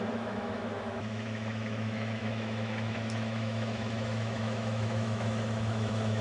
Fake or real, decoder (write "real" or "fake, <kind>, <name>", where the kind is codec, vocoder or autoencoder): fake, autoencoder, DAC-VAE